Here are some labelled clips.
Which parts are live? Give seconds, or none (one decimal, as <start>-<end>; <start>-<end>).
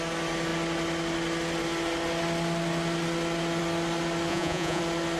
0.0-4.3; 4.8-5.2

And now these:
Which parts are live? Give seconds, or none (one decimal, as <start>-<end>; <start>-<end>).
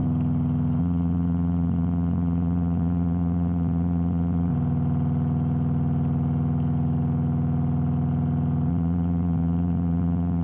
0.0-0.8; 4.5-8.7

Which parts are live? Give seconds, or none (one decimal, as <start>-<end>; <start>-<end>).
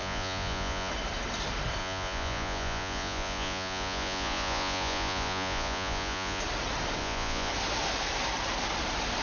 0.9-1.8; 6.4-7.0; 7.5-9.2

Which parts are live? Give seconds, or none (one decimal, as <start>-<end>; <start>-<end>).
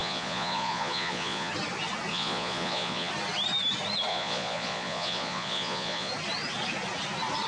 1.5-2.1; 3.1-4.1; 6.1-7.5